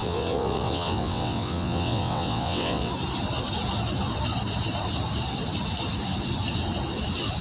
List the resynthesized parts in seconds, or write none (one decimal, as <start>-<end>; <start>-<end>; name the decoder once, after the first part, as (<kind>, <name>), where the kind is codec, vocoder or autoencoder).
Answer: 0.0-2.9 (vocoder, WaveNeXt)

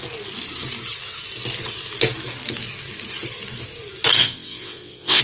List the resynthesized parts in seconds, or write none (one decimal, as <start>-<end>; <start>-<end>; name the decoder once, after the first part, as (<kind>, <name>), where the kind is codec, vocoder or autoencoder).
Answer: 4.2-5.2 (vocoder, WaveNeXt)

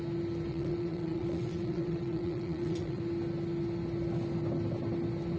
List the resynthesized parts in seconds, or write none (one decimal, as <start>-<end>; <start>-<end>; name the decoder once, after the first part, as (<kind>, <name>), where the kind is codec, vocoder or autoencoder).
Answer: 0.5-3.0 (vocoder, WaveNeXt)